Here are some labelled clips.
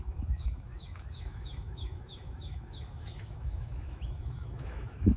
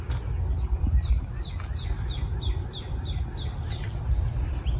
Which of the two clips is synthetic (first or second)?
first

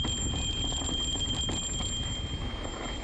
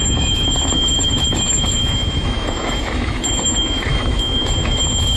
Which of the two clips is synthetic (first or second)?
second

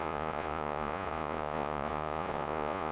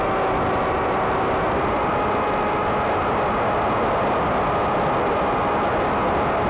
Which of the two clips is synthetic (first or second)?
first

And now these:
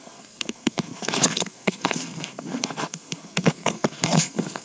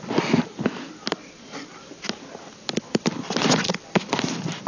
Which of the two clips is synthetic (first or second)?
first